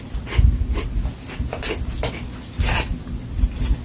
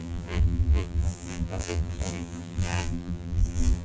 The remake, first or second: second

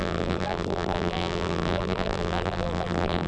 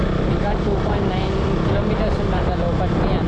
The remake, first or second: first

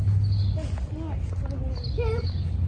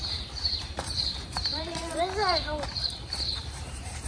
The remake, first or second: second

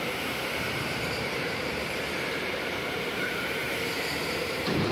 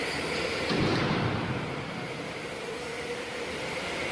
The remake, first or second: first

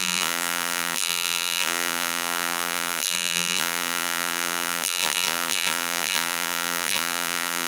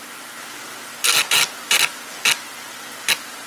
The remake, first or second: first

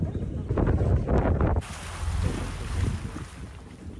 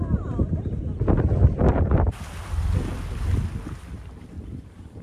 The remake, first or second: second